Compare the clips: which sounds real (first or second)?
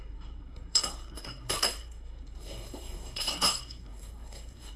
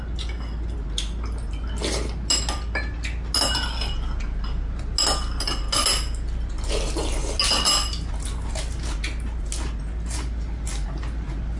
second